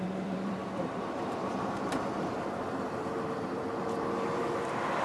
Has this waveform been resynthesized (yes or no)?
yes